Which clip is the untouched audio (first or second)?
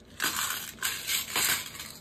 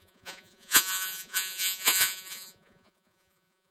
first